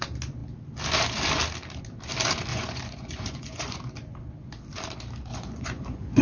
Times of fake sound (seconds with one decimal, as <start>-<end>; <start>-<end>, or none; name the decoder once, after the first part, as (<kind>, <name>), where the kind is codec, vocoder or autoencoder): 2.5-3.8 (vocoder, Vocos); 5.3-6.2